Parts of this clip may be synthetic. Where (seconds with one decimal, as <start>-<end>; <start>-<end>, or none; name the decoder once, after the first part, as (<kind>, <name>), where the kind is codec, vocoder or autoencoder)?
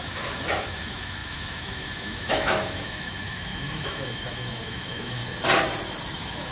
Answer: 0.0-5.2 (autoencoder, DAC-VAE); 6.1-6.5